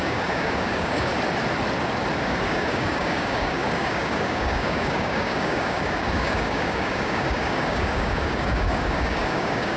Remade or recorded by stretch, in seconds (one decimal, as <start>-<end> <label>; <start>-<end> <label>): 0.0-1.1 remade; 1.1-2.2 recorded; 2.2-9.8 remade